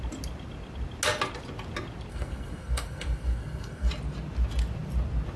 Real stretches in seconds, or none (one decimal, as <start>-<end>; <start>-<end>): 0.0-2.1; 3.9-5.4